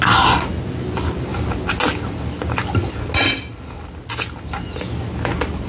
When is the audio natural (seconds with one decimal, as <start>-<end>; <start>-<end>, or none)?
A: 0.0-5.7